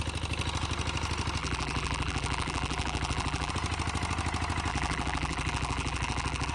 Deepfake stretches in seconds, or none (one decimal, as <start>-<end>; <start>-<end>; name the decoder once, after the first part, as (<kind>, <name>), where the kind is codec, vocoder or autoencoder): 1.4-3.5 (vocoder, BigVGAN v2); 4.7-6.5